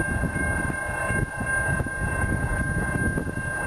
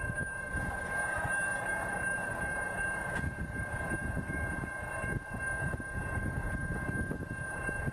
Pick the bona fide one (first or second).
first